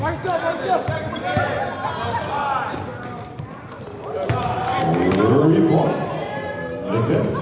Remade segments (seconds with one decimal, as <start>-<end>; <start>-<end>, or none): none